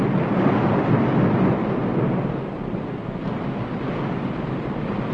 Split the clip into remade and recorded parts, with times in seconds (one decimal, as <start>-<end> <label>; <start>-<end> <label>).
0.0-5.1 recorded